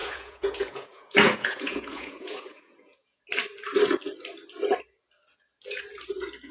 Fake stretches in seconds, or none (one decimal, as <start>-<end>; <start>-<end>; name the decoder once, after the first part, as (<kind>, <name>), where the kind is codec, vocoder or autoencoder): 0.0-3.2 (vocoder, Vocos)